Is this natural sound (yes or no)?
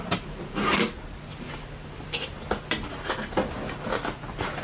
yes